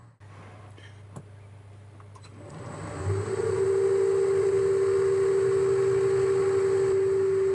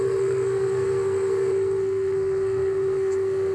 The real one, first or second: first